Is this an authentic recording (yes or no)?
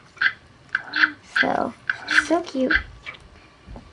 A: yes